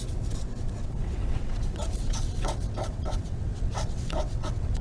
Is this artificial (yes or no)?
yes